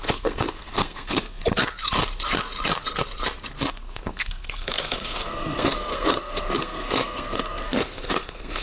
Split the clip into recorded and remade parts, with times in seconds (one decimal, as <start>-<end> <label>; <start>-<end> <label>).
0.0-1.4 remade; 1.4-3.7 recorded; 3.7-8.6 remade

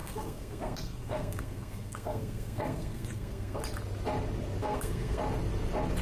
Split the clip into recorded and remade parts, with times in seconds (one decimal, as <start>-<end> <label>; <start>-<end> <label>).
0.0-3.6 remade; 3.6-4.6 recorded; 4.6-5.2 remade; 5.2-6.0 recorded